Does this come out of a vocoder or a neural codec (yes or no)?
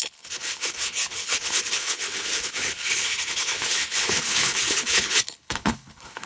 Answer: yes